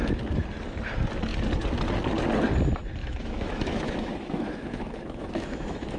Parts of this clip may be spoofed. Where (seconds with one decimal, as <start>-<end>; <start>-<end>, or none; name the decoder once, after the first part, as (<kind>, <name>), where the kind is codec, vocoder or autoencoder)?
3.0-6.0 (autoencoder, DAC-VAE)